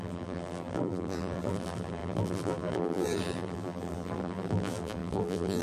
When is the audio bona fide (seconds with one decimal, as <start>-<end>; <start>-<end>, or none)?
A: none